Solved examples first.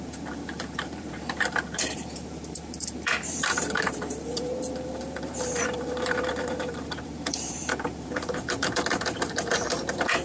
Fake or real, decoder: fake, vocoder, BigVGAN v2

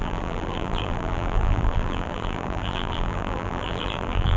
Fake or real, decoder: fake, vocoder, BigVGAN v2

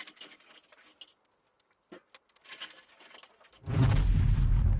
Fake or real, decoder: real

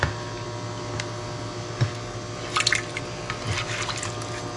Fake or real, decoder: real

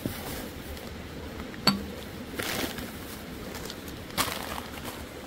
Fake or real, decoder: real